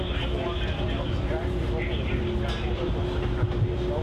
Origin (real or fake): real